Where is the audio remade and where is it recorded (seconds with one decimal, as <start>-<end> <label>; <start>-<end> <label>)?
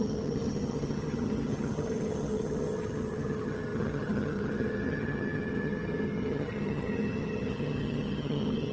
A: 0.0-8.7 remade